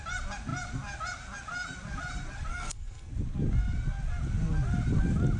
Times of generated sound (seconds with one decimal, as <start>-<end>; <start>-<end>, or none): 2.5-3.1

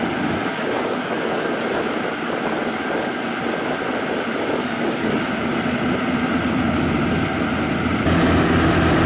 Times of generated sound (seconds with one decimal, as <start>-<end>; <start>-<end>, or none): 0.4-1.6; 4.6-5.2